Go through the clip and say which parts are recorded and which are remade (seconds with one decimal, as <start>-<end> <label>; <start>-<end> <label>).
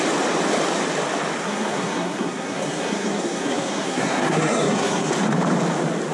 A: 0.0-1.4 recorded; 1.4-5.1 remade; 5.1-6.1 recorded